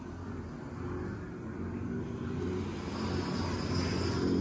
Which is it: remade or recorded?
recorded